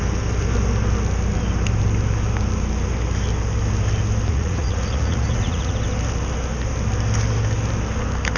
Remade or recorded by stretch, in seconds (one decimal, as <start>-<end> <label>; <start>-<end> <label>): 0.0-4.3 recorded; 4.3-5.7 remade; 5.7-8.4 recorded